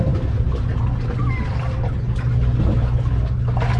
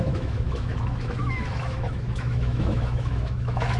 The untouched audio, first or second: first